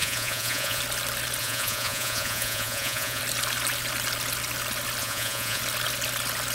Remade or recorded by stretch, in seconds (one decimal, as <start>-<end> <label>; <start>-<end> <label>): 0.0-0.8 remade; 0.8-1.4 recorded; 1.4-3.2 remade; 3.2-5.0 recorded; 5.0-5.6 remade; 5.6-6.5 recorded